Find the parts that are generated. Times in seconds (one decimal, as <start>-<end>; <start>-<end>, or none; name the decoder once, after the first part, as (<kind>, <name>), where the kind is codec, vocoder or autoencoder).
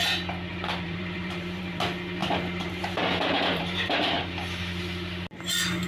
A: 0.5-1.8 (vocoder, BigVGAN v2); 2.2-4.2